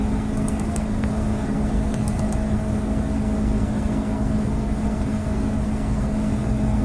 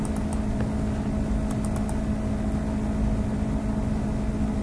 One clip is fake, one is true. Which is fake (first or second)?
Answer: first